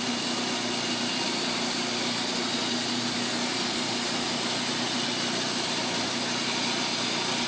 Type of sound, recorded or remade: recorded